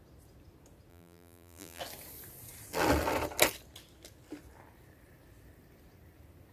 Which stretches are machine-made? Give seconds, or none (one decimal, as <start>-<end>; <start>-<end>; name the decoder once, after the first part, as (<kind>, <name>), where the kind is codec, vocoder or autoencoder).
0.9-1.8 (vocoder, BigVGAN v2)